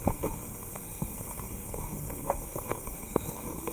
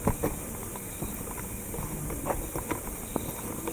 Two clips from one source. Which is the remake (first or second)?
first